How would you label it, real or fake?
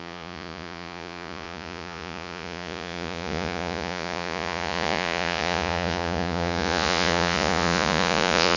fake